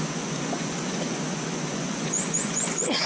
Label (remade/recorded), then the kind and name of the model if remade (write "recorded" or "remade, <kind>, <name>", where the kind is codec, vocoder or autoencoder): remade, vocoder, Vocos